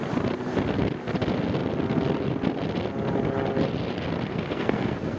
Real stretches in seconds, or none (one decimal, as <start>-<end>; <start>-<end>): 0.0-4.3